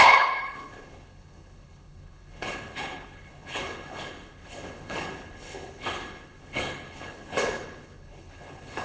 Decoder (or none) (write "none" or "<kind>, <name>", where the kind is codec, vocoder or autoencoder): codec, HILCodec